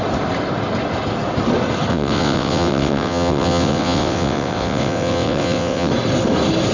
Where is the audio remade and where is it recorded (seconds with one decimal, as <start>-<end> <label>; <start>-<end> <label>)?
0.0-1.9 recorded; 1.9-5.9 remade; 5.9-6.7 recorded